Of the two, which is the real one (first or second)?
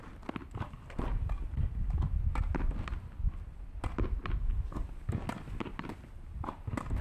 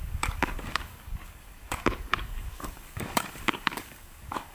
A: first